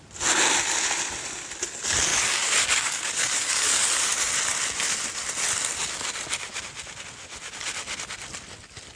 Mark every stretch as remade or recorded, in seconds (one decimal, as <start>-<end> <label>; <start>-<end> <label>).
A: 0.0-2.1 recorded; 2.1-4.3 remade; 4.3-9.0 recorded